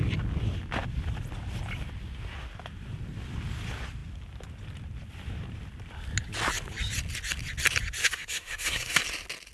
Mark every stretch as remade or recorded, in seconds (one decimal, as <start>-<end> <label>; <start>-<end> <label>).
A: 0.0-8.0 recorded; 8.0-9.0 remade; 9.0-9.5 recorded